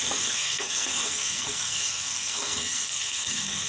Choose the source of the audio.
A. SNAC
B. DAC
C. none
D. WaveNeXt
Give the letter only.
A